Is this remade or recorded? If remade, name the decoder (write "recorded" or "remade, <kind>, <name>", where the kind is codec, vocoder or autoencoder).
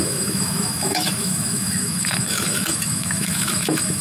remade, autoencoder, DAC-VAE